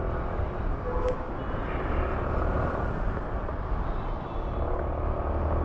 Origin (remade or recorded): recorded